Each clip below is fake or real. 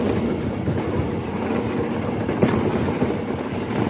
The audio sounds real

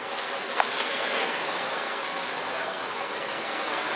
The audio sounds fake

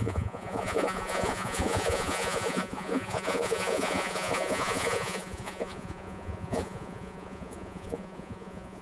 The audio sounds fake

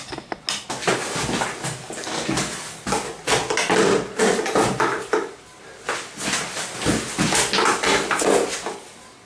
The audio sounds real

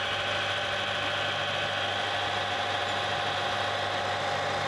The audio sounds real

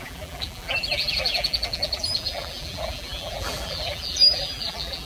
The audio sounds fake